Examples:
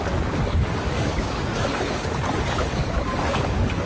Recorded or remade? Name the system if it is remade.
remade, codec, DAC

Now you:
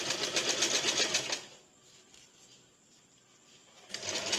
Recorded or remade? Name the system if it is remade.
recorded